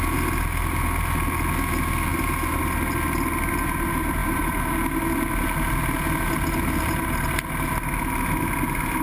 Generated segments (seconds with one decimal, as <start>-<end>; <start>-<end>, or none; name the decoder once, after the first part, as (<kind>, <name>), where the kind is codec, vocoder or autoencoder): none